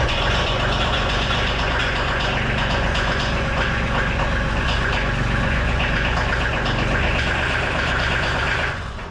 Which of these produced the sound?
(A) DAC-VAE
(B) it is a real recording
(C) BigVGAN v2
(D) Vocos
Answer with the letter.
D